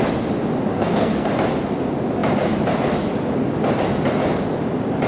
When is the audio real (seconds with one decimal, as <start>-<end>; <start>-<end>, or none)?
0.0-0.7; 1.3-5.1